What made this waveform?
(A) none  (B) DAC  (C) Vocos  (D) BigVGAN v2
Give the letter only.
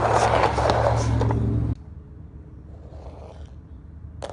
A